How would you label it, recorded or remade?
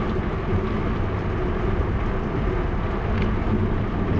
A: recorded